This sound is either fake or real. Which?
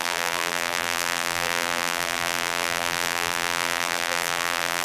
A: fake